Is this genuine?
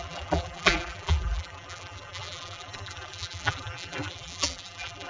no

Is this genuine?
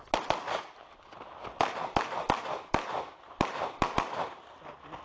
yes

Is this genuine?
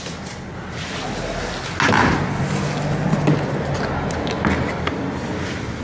yes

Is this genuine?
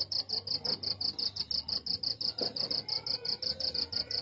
yes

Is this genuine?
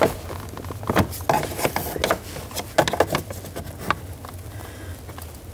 yes